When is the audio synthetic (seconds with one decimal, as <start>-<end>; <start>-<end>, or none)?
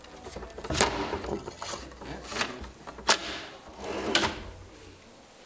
1.3-1.8